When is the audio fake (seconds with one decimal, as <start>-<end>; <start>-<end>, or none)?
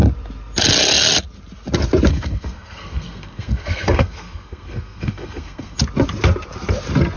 2.1-5.8